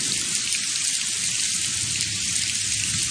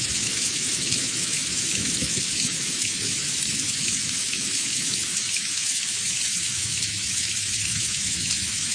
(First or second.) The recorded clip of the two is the first